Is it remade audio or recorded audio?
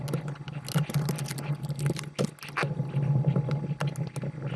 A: recorded